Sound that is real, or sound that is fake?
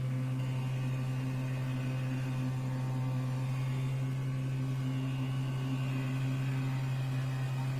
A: real